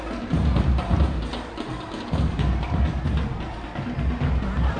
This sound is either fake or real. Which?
real